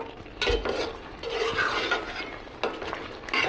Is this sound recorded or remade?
recorded